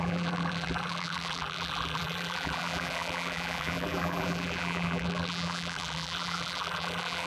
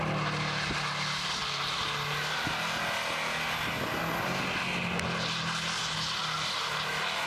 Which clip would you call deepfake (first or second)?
first